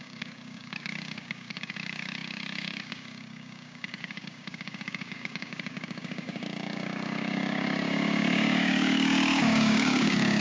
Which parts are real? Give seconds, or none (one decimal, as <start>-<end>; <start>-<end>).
none